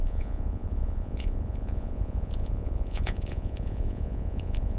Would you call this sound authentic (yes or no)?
no